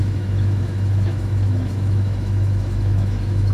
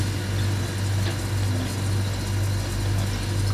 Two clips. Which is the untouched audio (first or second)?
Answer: second